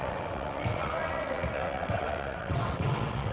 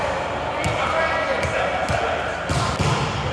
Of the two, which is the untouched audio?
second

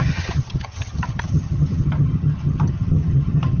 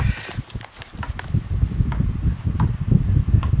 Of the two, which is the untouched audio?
second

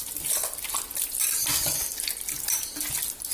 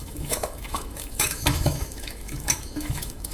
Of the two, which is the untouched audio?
first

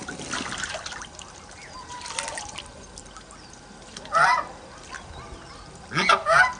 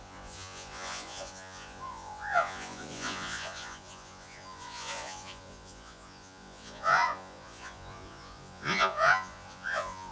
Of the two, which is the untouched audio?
first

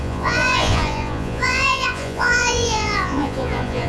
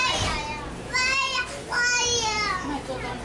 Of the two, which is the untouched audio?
second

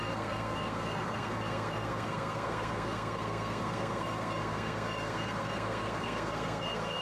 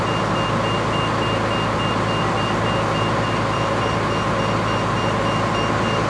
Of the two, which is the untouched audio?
second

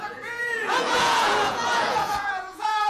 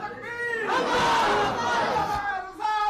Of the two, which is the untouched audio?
second